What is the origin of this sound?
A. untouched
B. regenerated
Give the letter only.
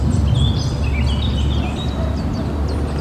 A